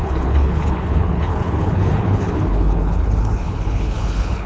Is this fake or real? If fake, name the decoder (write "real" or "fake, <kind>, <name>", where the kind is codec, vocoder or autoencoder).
fake, codec, HILCodec